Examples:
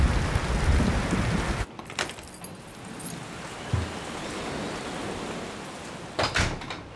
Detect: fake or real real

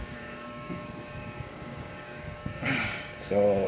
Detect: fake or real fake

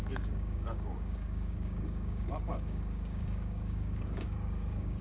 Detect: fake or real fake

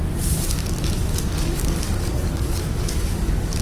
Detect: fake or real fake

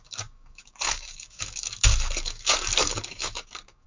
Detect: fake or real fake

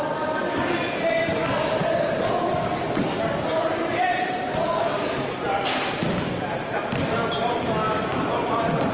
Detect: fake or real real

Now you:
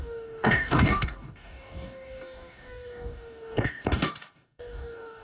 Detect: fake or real fake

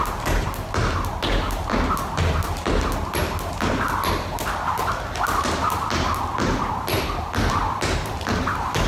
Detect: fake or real real